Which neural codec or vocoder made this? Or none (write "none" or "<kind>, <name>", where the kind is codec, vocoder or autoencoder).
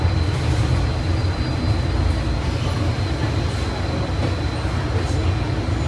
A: none